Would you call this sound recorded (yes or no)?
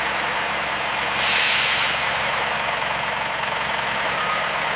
yes